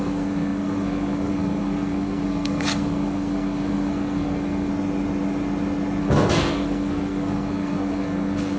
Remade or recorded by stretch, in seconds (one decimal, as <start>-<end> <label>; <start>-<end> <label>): 0.0-4.7 remade; 4.7-6.0 recorded; 6.0-8.6 remade

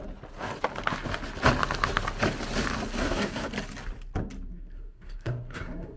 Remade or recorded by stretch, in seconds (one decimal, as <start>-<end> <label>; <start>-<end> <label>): 0.0-3.0 recorded; 3.0-3.5 remade; 3.5-4.5 recorded; 4.5-6.0 remade

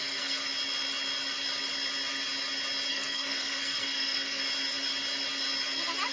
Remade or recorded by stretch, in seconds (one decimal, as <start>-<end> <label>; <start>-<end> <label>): 0.0-0.4 remade; 0.4-2.9 recorded; 2.9-4.4 remade; 4.4-6.1 recorded

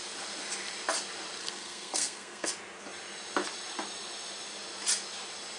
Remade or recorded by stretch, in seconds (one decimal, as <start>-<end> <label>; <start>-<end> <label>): 0.0-1.4 recorded; 1.4-2.5 remade; 2.5-5.6 recorded

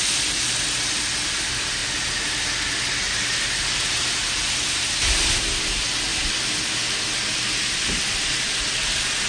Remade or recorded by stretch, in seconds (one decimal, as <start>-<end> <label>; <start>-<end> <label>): 0.0-9.3 recorded

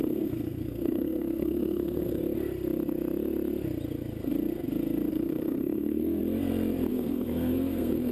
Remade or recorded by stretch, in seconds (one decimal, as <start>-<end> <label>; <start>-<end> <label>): 0.0-2.2 remade; 2.2-5.1 recorded; 5.1-6.2 remade; 6.2-6.9 recorded; 6.9-8.1 remade

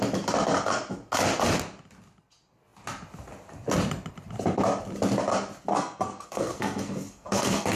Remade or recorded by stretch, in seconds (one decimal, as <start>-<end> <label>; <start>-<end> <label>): 0.0-5.7 recorded; 5.7-7.8 remade

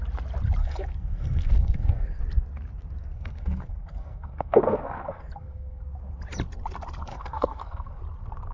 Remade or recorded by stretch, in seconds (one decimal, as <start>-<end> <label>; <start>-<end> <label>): 0.0-0.6 recorded; 0.6-2.2 remade; 2.2-3.0 recorded; 3.0-5.8 remade; 5.8-7.1 recorded; 7.1-8.0 remade; 8.0-8.5 recorded